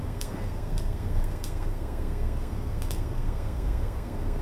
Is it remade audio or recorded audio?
remade